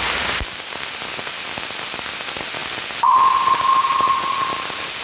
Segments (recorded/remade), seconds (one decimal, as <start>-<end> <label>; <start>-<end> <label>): 0.0-5.0 recorded